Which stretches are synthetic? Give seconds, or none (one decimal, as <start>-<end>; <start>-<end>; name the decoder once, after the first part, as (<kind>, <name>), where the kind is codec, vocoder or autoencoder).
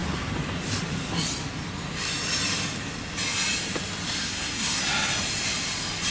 4.2-4.8 (codec, SNAC)